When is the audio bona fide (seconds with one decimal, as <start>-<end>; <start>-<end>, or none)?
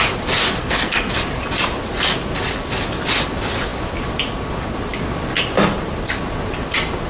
0.0-0.6; 1.1-7.1